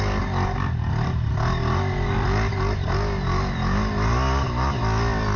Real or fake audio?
real